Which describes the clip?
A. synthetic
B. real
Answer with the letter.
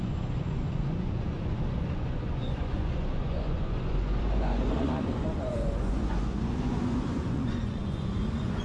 A